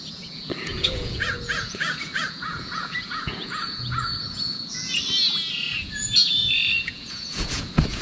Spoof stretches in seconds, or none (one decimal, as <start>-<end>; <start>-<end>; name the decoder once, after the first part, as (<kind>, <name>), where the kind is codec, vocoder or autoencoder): 0.0-5.0 (vocoder, Vocos); 5.5-8.0